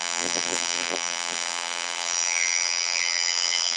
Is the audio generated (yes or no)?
yes